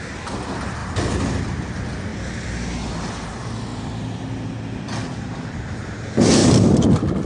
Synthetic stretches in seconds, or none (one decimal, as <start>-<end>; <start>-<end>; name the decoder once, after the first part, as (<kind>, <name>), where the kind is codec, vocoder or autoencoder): 2.1-3.1 (vocoder, BigVGAN v2); 3.7-6.0; 6.4-7.3